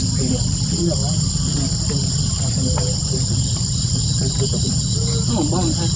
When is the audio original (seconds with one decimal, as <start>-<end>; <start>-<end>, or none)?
0.0-6.0